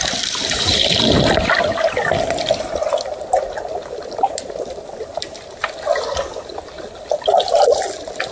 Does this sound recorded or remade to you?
recorded